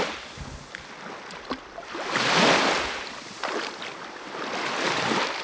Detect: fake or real real